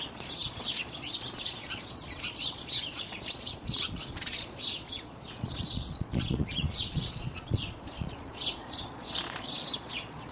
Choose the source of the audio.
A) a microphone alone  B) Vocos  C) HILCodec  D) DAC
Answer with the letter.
B